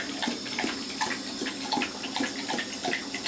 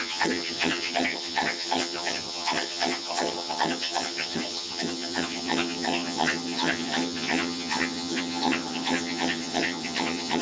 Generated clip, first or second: second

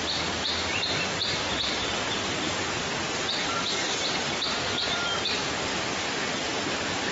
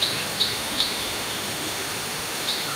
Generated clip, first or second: second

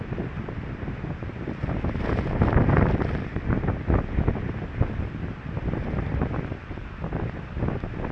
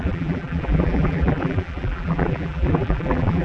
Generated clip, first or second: second